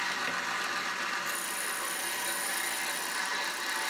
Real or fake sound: real